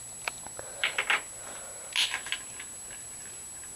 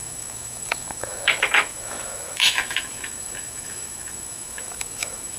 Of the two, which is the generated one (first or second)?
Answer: second